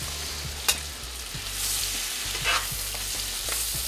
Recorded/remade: recorded